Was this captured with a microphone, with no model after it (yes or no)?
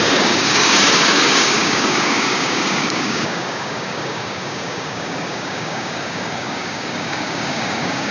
no